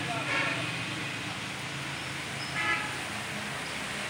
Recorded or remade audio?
recorded